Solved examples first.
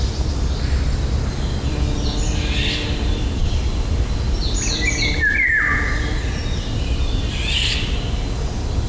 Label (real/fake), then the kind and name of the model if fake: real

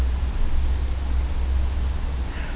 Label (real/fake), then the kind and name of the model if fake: real